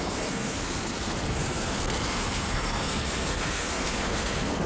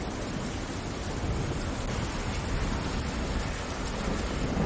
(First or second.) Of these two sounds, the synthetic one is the first